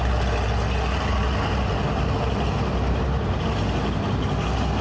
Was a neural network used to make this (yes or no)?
no